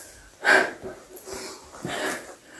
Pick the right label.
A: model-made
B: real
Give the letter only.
B